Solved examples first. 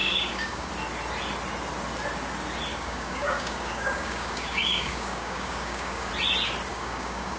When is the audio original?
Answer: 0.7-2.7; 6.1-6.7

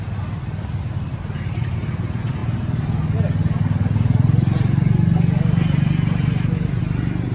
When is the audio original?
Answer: 0.0-1.1; 1.6-7.3